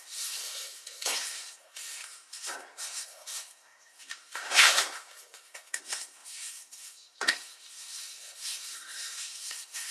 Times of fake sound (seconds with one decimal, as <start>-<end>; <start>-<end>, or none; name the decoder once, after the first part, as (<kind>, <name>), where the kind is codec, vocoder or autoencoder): 0.0-9.9 (codec, SNAC)